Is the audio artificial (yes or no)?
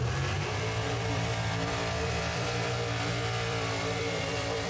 yes